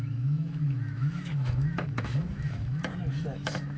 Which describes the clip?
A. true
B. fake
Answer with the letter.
B